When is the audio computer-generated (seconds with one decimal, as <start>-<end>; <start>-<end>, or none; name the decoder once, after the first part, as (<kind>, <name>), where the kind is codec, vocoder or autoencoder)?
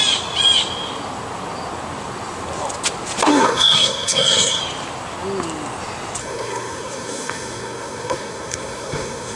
3.3-4.6 (codec, SNAC); 6.2-9.4